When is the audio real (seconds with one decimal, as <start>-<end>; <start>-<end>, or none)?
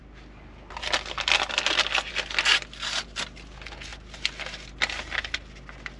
0.0-6.0